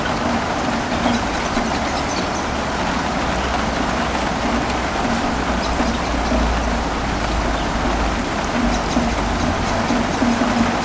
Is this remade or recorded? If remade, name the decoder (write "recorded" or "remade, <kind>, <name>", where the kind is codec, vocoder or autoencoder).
recorded